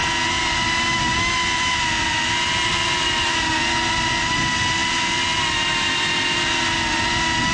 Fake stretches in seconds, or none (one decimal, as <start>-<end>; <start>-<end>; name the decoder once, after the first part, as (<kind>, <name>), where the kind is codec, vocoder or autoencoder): none

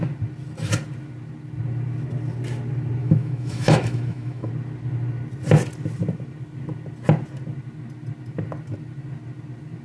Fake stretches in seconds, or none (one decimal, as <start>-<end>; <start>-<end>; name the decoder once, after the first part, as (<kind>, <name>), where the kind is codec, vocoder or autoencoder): 3.0-4.5 (autoencoder, DAC-VAE)

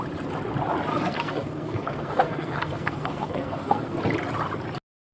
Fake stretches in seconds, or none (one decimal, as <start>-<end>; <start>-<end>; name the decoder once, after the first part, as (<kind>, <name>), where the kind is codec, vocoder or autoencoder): 0.9-4.0 (codec, SNAC)